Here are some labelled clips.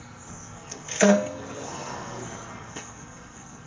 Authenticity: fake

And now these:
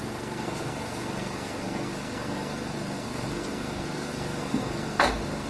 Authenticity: fake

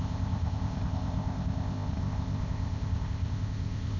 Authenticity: fake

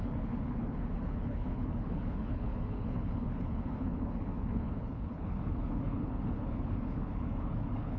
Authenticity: fake